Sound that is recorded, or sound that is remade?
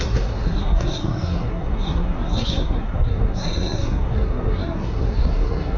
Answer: remade